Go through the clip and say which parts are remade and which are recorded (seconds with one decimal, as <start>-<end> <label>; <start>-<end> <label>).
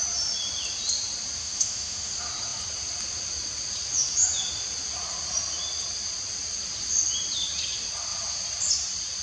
0.0-1.4 recorded; 1.4-2.1 remade; 2.1-9.2 recorded